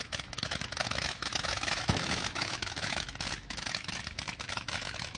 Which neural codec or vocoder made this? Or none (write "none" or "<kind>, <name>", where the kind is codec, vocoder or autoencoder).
autoencoder, DAC-VAE